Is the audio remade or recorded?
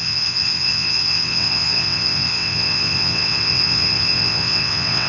remade